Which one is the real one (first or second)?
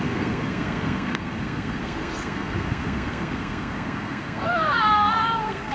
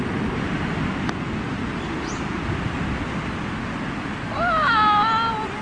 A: second